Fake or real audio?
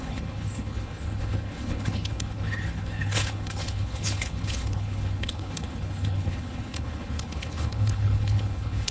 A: fake